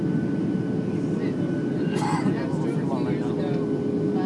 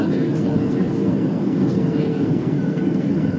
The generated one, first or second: second